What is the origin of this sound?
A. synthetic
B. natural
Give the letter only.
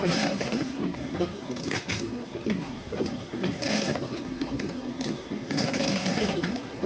A